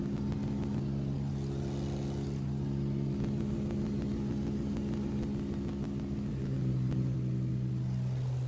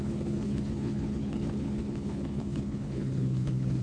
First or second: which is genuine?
first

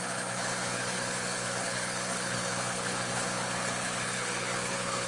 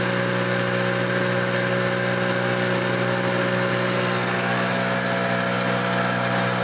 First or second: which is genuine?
second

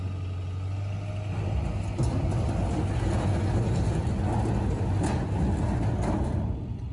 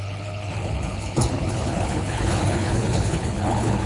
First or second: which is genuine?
first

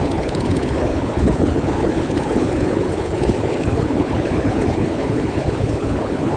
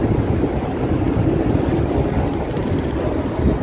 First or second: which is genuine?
second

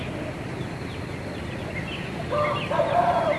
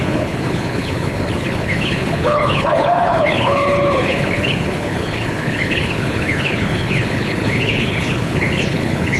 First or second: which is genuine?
first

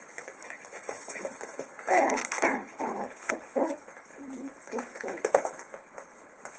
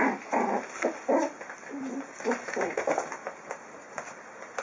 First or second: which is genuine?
second